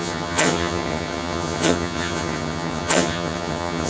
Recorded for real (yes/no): no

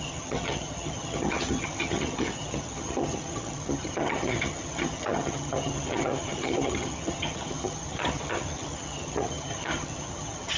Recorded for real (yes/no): no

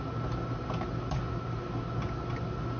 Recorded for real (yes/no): yes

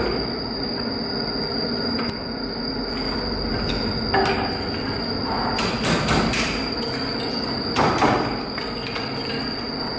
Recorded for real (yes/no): yes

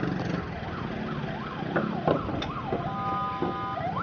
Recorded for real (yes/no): yes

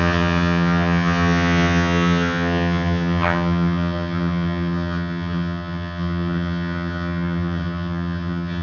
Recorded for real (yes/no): no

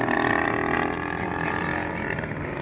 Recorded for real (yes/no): yes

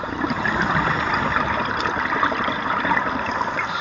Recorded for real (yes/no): yes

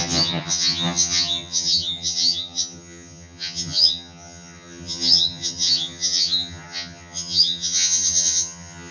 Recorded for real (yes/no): no